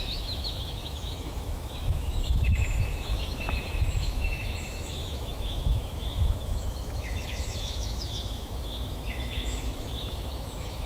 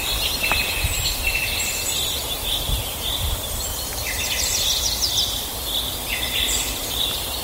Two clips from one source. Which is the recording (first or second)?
second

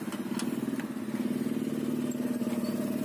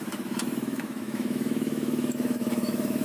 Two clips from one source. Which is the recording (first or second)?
first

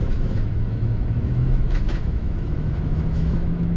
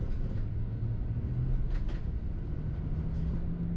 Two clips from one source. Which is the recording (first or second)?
second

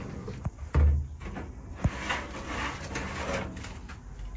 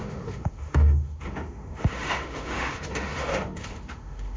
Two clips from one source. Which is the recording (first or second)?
first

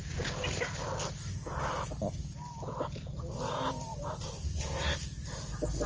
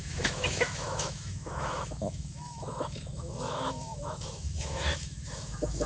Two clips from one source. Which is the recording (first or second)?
first